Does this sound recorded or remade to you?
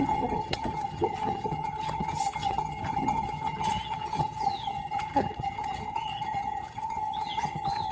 remade